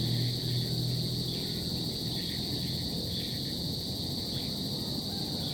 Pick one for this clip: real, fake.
real